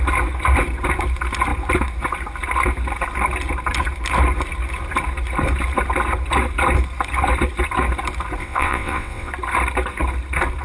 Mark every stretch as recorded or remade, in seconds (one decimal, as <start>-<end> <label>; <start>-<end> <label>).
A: 0.0-8.4 recorded; 8.4-9.3 remade; 9.3-10.6 recorded